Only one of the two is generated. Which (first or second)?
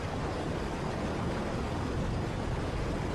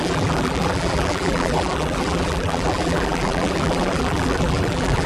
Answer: second